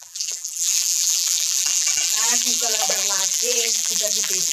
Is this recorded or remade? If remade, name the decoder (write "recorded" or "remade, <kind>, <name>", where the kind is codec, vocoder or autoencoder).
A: remade, vocoder, BigVGAN v2